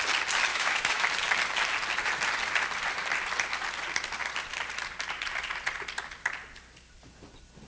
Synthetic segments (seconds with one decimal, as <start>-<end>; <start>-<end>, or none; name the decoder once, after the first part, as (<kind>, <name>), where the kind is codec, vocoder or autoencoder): 0.5-1.1 (autoencoder, DAC-VAE)